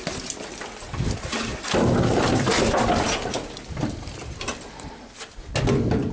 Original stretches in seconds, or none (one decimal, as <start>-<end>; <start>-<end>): 0.0-1.5; 5.2-6.1